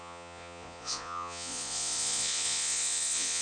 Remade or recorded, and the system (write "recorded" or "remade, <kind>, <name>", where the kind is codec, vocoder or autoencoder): remade, vocoder, Vocos